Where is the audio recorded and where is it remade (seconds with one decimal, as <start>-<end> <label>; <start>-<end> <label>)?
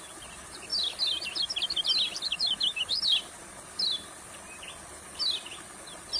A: 0.0-6.2 recorded